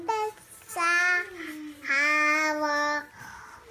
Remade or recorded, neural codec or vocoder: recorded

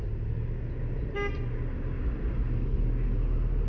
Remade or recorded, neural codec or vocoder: recorded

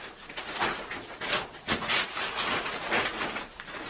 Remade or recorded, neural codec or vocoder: remade, vocoder, Vocos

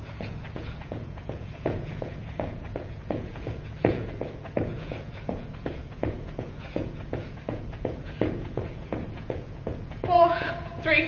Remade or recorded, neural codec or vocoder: remade, vocoder, Vocos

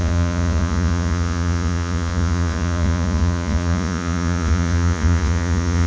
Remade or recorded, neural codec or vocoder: remade, vocoder, Vocos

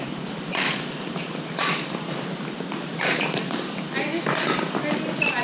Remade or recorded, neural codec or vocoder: recorded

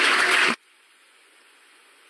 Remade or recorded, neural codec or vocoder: remade, vocoder, Vocos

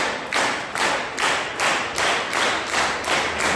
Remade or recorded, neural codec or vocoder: recorded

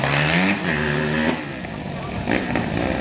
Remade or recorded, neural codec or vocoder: recorded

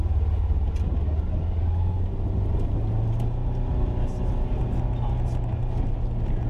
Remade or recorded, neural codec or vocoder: recorded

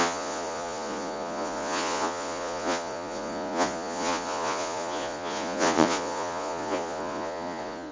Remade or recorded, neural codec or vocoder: remade, vocoder, Vocos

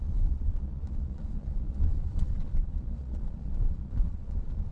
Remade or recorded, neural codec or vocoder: remade, vocoder, Vocos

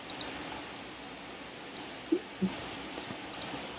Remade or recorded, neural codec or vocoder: recorded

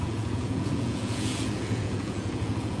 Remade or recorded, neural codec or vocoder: remade, vocoder, Vocos